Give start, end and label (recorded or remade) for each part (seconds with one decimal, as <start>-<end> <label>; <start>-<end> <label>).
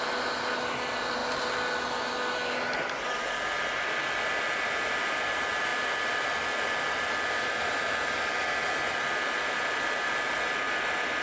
0.0-11.2 recorded